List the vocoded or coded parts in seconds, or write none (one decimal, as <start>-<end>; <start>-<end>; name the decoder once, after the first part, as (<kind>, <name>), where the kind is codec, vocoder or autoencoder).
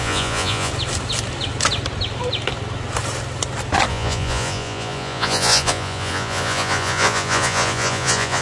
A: 0.0-0.7 (vocoder, Vocos); 3.9-8.4